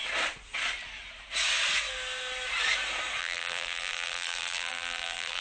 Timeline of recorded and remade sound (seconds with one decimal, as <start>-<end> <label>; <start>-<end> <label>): 0.0-3.2 recorded; 3.2-5.4 remade